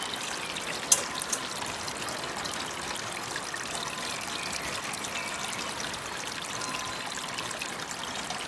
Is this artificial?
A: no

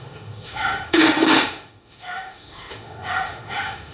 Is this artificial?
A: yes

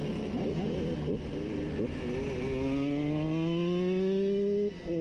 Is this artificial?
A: no